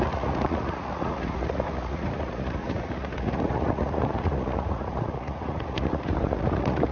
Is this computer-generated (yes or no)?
yes